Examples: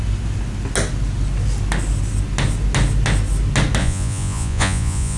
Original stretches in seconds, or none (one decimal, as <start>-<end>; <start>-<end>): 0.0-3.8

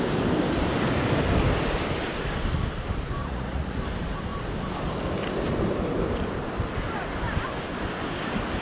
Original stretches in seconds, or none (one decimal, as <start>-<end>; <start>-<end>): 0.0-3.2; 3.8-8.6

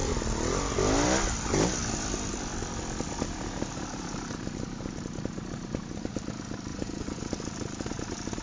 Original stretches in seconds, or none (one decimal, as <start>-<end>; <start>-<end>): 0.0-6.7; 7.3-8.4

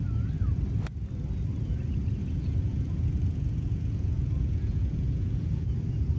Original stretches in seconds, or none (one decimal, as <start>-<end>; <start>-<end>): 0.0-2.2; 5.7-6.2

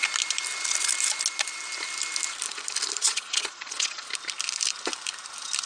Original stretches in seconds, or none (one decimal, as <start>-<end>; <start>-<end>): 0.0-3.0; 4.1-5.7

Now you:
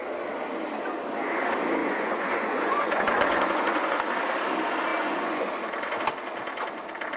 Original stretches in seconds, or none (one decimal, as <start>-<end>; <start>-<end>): 0.0-1.8; 4.1-4.9; 5.5-7.2

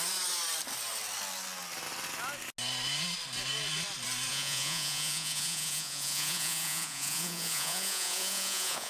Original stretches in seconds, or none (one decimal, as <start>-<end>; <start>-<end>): 0.0-4.3

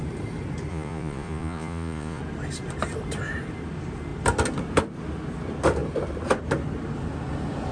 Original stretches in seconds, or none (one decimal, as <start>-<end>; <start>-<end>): 0.0-0.7; 2.2-7.7